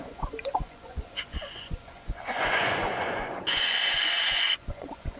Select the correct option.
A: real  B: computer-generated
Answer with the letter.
B